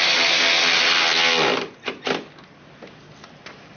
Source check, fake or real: real